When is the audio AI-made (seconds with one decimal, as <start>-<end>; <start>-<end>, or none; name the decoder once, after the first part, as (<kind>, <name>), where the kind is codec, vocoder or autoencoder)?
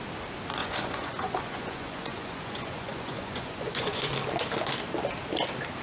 0.6-4.1 (vocoder, Vocos)